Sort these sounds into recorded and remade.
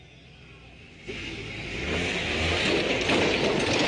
recorded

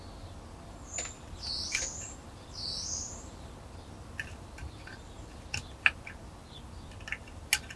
recorded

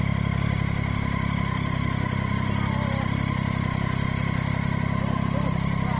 recorded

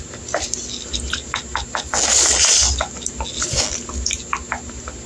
recorded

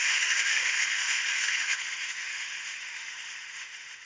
remade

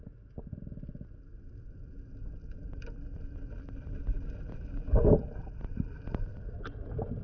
recorded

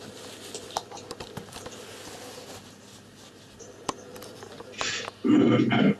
recorded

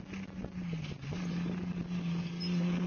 recorded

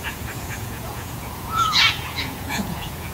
remade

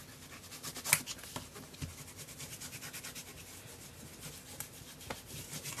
recorded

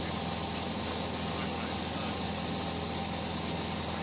recorded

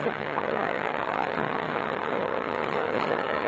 remade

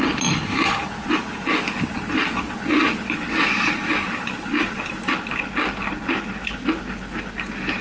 recorded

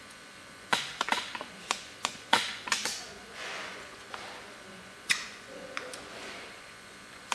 remade